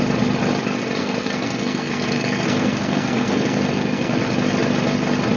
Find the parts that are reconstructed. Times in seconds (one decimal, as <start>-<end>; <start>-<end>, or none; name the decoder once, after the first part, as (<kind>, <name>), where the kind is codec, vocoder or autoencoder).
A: 1.0-4.2 (codec, SNAC)